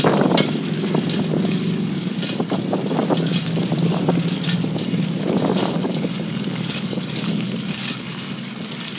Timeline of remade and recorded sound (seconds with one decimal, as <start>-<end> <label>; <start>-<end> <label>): 0.0-1.3 recorded; 1.3-2.1 remade; 2.1-5.6 recorded; 5.6-8.5 remade; 8.5-9.0 recorded